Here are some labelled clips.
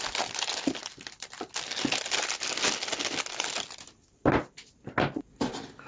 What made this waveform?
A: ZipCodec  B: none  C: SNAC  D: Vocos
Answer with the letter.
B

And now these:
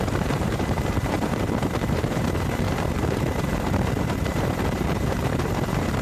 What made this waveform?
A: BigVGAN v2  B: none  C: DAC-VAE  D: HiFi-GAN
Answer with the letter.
A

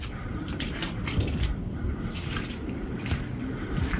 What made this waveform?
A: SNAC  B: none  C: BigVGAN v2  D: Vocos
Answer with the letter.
C